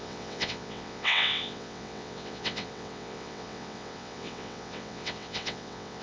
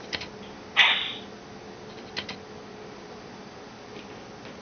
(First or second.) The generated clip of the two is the first